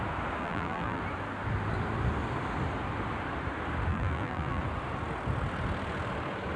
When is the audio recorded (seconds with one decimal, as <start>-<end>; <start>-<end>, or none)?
0.0-0.4; 1.0-3.9; 4.6-6.6